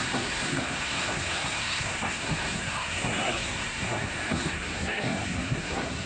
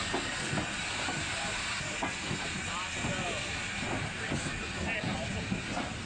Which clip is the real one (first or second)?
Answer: second